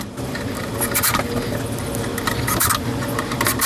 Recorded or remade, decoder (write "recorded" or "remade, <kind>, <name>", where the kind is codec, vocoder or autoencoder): recorded